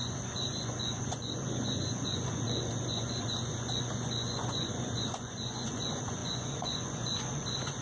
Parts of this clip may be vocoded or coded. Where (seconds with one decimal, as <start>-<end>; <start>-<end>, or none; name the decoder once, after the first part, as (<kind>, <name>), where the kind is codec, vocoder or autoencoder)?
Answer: 0.0-7.8 (vocoder, Vocos)